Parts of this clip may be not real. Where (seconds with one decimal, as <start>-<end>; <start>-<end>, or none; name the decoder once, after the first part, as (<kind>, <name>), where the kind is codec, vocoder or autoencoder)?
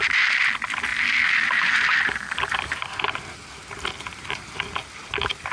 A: none